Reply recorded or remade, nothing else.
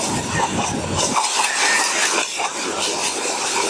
recorded